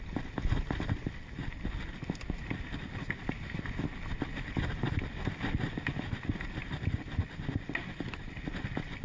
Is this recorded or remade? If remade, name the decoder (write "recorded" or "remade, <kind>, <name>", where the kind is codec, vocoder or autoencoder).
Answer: recorded